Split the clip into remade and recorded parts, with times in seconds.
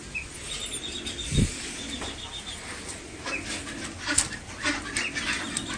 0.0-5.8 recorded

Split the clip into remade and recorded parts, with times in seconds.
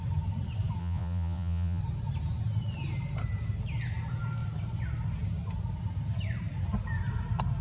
0.0-0.8 recorded; 0.8-1.8 remade; 1.8-7.6 recorded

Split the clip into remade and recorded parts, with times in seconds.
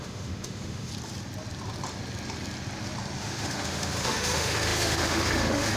0.0-0.9 remade; 0.9-3.2 recorded; 3.2-5.8 remade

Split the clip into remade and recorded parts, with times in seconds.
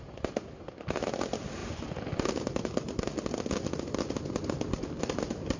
0.0-5.6 recorded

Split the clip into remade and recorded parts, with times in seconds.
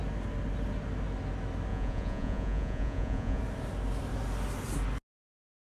0.0-1.7 recorded; 1.7-3.4 remade; 3.4-5.7 recorded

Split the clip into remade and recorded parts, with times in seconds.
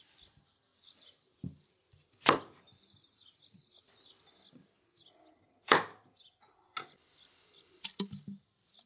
0.0-8.9 recorded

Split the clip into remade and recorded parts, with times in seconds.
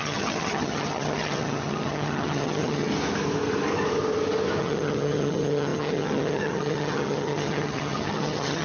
0.0-2.9 remade; 2.9-4.6 recorded; 4.6-8.6 remade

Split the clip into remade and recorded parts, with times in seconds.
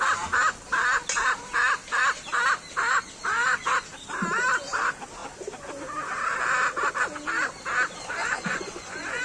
0.0-8.2 recorded; 8.2-9.2 remade